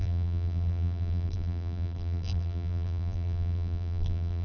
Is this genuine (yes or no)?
no